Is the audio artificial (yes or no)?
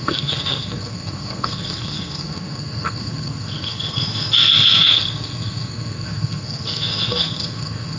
yes